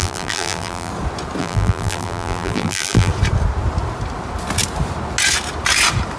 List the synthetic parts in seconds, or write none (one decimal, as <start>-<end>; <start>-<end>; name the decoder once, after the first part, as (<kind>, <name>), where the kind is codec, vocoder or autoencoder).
0.0-0.9 (vocoder, BigVGAN v2); 1.4-3.1